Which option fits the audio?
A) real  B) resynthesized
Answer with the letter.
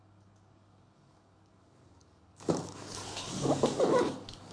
B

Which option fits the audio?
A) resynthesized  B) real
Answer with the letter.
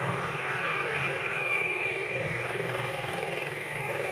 A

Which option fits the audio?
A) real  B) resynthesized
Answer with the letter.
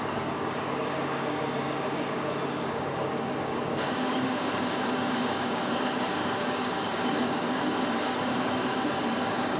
B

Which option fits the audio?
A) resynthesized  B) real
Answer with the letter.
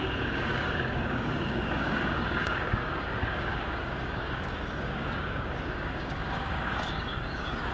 A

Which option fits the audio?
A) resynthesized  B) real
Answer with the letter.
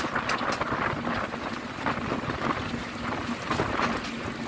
B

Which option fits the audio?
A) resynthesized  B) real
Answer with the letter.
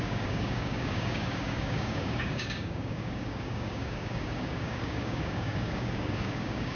A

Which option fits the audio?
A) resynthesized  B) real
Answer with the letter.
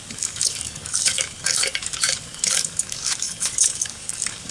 A